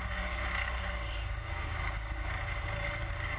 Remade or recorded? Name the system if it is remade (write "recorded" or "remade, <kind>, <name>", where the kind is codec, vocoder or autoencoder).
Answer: remade, codec, DAC